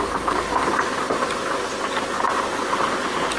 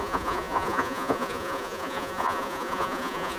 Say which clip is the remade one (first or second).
second